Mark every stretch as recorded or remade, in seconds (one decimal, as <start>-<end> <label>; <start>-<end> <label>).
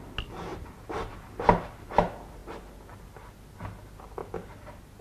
0.0-0.5 recorded; 0.5-1.1 remade; 1.1-5.0 recorded